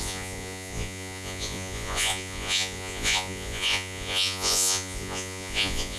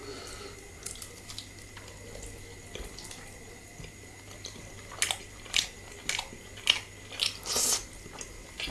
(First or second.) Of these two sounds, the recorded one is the second